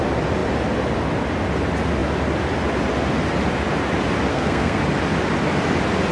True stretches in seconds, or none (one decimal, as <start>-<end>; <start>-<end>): 0.0-4.3; 4.8-6.1